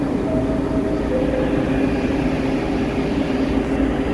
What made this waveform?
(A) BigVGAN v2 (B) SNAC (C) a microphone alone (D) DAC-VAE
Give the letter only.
C